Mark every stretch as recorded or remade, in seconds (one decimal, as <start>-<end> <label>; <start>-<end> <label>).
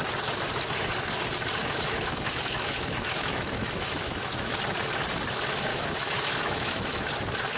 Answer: 0.0-1.6 recorded; 1.6-4.5 remade; 4.5-5.7 recorded; 5.7-7.1 remade; 7.1-7.6 recorded